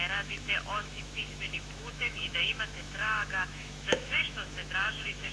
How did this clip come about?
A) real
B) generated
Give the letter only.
B